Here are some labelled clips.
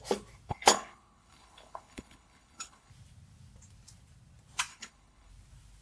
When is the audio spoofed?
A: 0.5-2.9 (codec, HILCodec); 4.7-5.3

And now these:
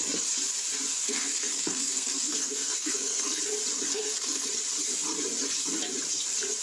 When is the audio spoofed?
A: 0.9-3.4 (codec, SNAC); 3.9-4.5

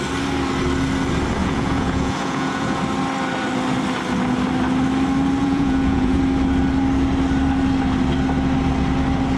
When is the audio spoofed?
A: 1.4-2.8 (vocoder, Vocos); 5.4-6.2

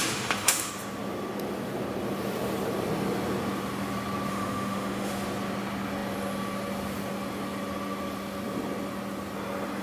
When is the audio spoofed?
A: 0.0-0.7 (autoencoder, DAC-VAE); 4.3-5.1

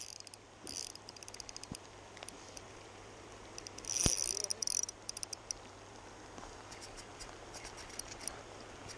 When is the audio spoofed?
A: none

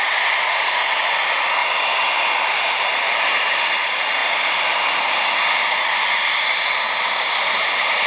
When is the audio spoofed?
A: 0.0-1.6 (vocoder, BigVGAN v2); 2.5-4.2; 6.3-8.1